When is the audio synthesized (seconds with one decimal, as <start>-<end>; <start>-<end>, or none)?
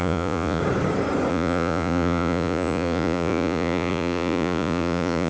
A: 0.0-0.6; 1.3-5.3